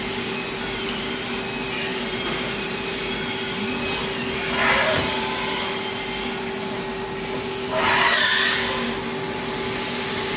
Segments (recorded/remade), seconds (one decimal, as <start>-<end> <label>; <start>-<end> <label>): 0.0-1.9 recorded; 1.9-3.1 remade; 3.1-10.4 recorded

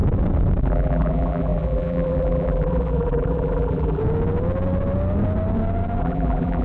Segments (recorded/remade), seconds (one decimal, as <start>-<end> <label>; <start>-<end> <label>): 0.0-0.6 recorded; 0.6-4.0 remade; 4.0-6.0 recorded; 6.0-6.6 remade

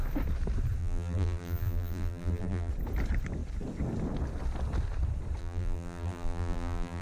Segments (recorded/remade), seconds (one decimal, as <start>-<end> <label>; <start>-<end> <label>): 0.0-0.8 recorded; 0.8-2.7 remade; 2.7-5.4 recorded; 5.4-7.0 remade